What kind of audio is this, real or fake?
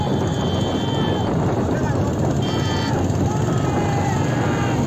real